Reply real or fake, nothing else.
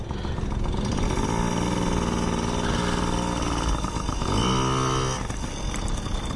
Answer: real